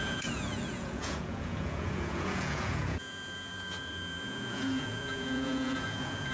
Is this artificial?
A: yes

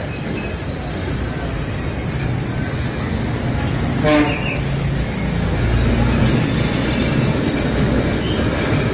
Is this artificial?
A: no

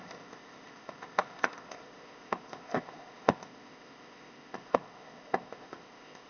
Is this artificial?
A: yes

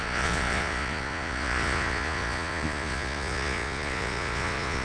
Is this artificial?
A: yes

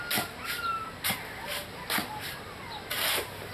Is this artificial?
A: no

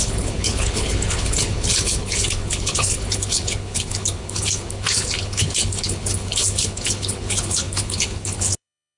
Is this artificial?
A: yes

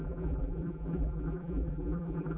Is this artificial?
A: yes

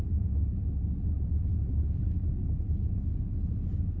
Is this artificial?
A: no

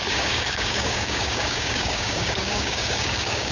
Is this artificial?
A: yes